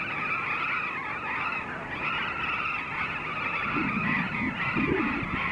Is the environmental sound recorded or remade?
recorded